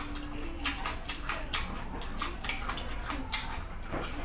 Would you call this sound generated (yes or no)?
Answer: no